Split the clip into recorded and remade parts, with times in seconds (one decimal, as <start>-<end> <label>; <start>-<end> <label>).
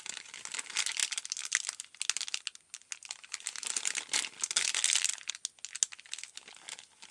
0.0-7.1 recorded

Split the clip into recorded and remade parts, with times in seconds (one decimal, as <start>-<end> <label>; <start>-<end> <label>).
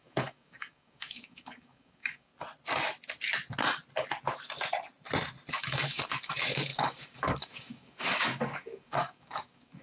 0.0-2.3 remade; 2.3-5.5 recorded; 5.5-9.8 remade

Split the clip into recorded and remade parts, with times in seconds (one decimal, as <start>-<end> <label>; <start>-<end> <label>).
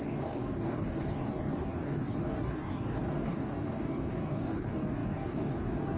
0.0-6.0 remade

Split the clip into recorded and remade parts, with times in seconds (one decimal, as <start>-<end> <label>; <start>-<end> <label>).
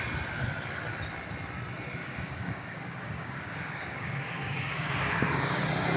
0.0-2.0 recorded; 2.0-5.6 remade; 5.6-6.0 recorded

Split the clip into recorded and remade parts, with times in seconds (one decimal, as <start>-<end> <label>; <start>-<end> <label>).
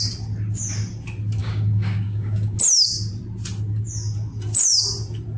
0.0-1.4 recorded; 1.4-2.6 remade; 2.6-5.4 recorded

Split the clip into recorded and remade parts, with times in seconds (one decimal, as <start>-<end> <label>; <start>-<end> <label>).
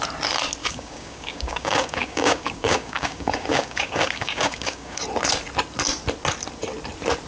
0.0-0.6 recorded; 0.6-5.0 remade; 5.0-7.3 recorded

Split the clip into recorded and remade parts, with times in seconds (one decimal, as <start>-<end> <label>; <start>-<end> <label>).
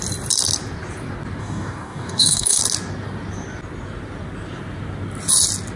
0.0-1.4 recorded; 1.4-2.6 remade; 2.6-5.8 recorded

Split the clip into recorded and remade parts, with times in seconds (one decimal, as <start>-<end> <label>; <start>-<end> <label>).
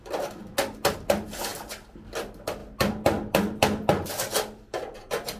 0.0-5.4 recorded